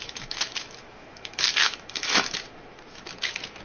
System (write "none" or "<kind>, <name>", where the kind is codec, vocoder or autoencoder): autoencoder, DAC-VAE